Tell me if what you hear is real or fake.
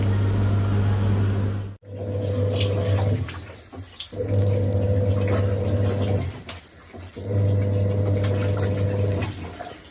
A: real